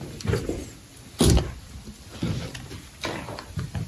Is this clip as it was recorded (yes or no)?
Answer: yes